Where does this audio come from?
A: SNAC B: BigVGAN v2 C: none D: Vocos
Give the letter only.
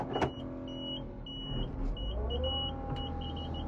C